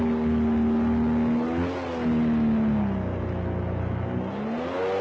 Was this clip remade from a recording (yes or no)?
no